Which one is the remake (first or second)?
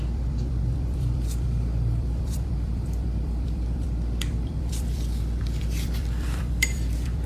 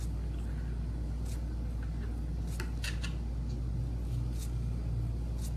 first